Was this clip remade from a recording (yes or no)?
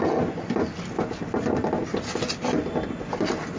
no